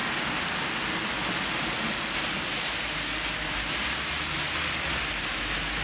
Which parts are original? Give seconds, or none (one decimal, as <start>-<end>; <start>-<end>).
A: 0.0-5.8